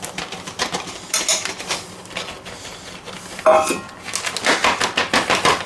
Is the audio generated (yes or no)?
no